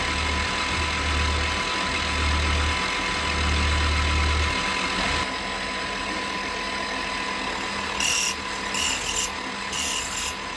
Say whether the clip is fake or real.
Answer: real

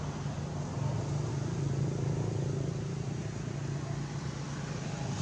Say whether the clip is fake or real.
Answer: real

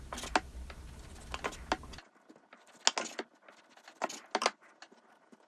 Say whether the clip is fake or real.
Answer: real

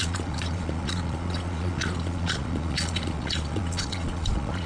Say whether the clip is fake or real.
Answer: fake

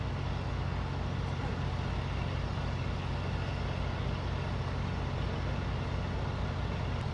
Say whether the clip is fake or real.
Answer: real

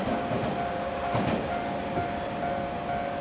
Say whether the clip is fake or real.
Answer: real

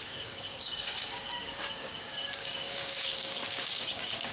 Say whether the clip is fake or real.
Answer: fake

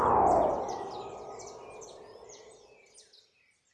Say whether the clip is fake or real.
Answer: real